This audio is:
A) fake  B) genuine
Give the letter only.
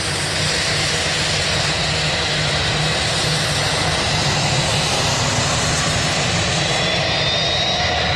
B